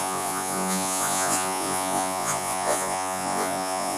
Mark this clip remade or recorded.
remade